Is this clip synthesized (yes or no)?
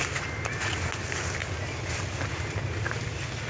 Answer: no